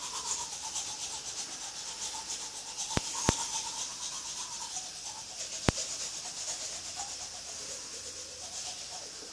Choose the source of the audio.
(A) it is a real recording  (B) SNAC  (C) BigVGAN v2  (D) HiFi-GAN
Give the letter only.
A